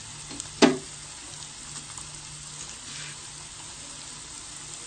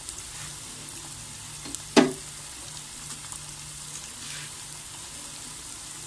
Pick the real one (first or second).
first